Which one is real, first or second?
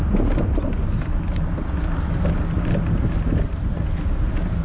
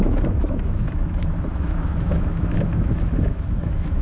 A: first